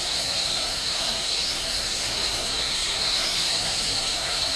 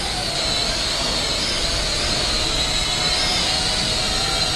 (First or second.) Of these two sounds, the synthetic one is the first